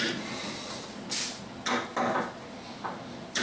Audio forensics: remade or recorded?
recorded